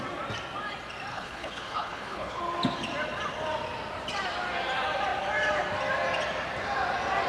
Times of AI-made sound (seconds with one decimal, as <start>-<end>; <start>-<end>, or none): 1.1-2.4